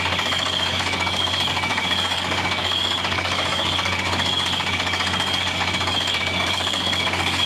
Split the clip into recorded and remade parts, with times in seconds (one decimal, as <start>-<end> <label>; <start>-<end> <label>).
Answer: 0.0-7.5 remade